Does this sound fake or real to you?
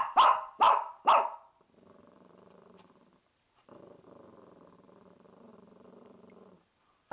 fake